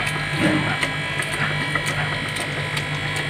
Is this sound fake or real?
real